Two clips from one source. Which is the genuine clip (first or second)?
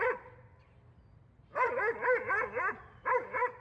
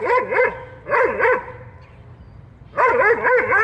first